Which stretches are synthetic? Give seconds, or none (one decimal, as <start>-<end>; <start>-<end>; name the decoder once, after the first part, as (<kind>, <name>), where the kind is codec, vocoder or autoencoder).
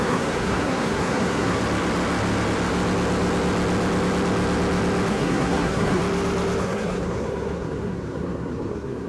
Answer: 0.0-1.6 (codec, SNAC); 5.1-6.0; 6.6-9.1